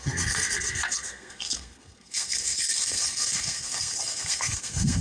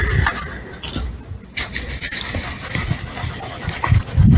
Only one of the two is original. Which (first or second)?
second